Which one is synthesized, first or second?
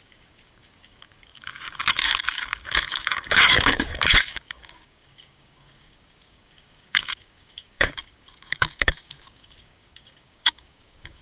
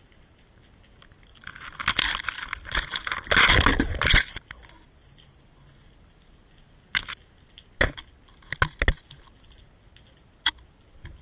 first